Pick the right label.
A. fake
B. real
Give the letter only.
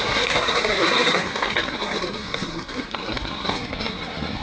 A